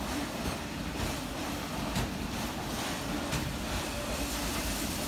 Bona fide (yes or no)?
no